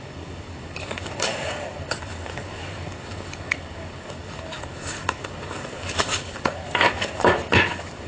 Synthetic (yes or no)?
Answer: yes